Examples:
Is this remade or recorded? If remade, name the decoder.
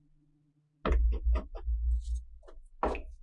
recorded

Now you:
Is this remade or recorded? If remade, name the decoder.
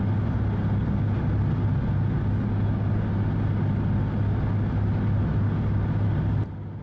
recorded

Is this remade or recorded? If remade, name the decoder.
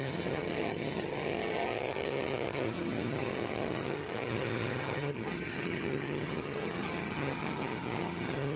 remade, vocoder, HiFi-GAN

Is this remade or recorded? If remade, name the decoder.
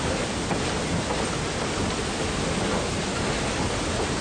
recorded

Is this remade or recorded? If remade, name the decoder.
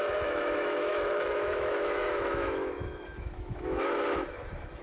remade, autoencoder, DAC-VAE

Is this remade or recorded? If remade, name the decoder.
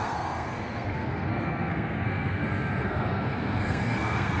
remade, codec, SNAC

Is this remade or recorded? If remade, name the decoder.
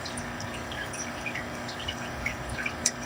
remade, codec, DAC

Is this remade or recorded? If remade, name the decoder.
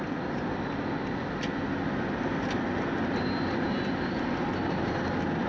recorded